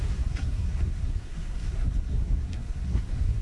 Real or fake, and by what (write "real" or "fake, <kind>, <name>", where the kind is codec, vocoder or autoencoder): fake, codec, SNAC